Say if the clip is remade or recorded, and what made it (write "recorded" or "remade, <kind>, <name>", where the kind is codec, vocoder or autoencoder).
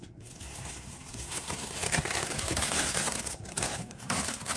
remade, codec, SNAC